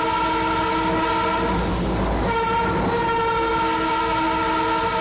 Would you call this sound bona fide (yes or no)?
yes